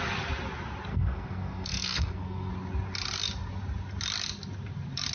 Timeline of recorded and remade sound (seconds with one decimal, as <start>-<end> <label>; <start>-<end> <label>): 0.0-0.9 recorded; 0.9-2.5 remade; 2.5-5.1 recorded